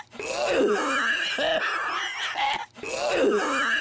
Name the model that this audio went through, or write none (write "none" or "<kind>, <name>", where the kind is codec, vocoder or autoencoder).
none